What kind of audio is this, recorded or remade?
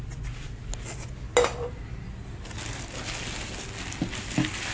recorded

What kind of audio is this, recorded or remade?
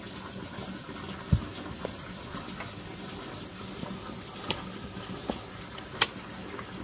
recorded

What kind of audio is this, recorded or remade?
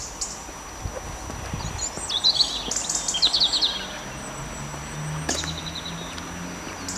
recorded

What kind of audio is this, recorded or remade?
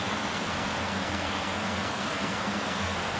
remade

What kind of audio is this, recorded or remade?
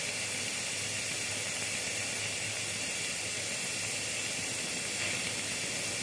recorded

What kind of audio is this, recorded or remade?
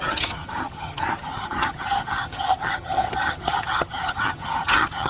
remade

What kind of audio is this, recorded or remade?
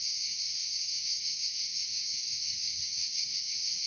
remade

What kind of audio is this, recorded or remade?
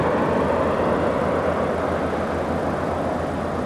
recorded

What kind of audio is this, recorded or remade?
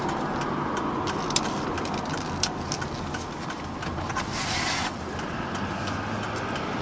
recorded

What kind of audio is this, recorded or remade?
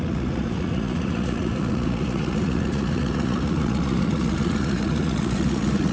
remade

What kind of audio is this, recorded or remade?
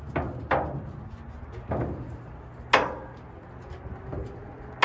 recorded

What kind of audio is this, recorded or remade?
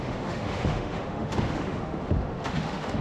remade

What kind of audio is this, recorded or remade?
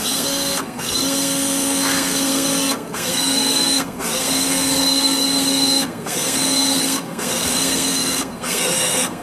remade